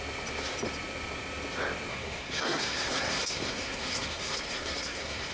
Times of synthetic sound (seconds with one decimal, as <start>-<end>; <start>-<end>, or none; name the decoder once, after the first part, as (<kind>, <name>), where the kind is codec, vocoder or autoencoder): 1.9-5.3 (codec, SNAC)